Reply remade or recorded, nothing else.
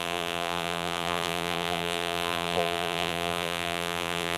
remade